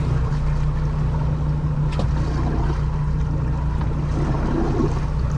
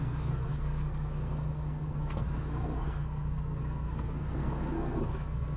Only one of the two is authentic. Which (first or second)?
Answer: first